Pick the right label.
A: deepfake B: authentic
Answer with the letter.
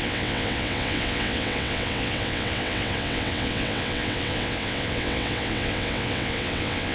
A